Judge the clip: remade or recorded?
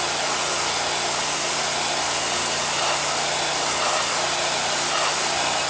recorded